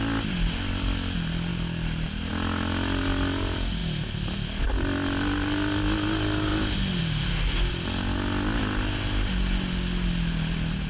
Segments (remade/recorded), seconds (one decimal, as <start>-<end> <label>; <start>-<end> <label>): 0.0-10.9 recorded